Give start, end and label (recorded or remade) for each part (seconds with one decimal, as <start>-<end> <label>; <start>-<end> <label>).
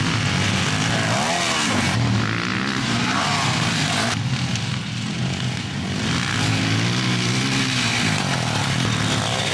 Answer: 0.0-9.5 recorded